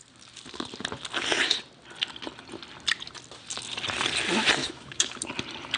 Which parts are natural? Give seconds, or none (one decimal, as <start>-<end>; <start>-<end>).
0.0-4.6; 5.2-5.8